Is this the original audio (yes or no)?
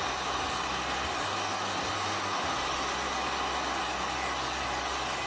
yes